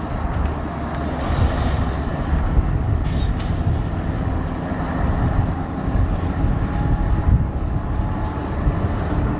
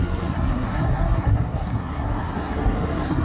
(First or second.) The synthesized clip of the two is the second